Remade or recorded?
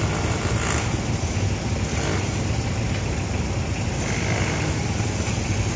recorded